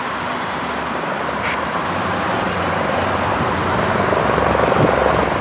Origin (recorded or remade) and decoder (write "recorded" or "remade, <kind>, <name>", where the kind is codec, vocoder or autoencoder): recorded